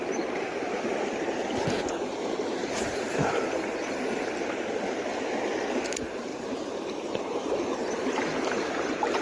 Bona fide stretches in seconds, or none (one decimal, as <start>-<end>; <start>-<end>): 0.0-6.3